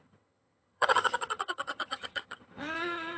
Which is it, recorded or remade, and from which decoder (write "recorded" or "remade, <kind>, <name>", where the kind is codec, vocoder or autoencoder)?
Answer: remade, vocoder, HiFi-GAN